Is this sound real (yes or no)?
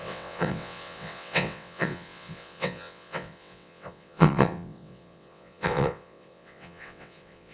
no